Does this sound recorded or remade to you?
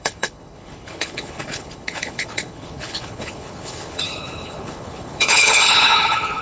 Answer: remade